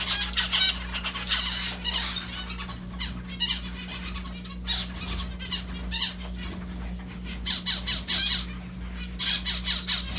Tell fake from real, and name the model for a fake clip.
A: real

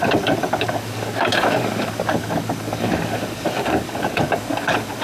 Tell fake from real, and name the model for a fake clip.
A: fake, codec, DAC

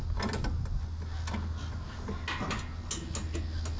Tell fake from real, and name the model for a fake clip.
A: real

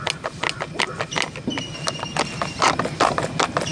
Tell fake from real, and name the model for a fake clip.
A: real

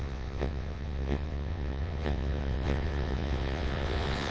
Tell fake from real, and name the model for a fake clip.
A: fake, vocoder, WaveNeXt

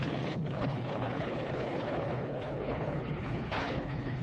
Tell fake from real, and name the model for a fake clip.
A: fake, codec, HILCodec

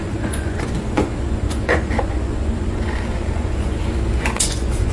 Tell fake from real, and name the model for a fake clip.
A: fake, vocoder, Vocos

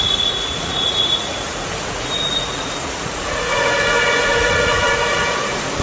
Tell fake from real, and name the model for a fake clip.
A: fake, vocoder, Vocos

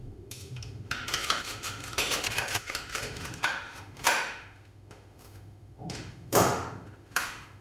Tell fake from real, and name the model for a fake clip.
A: fake, autoencoder, DAC-VAE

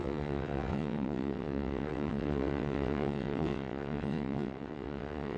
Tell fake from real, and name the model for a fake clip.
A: fake, vocoder, WaveNeXt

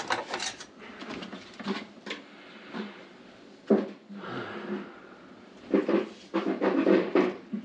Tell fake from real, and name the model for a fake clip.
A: fake, vocoder, BigVGAN v2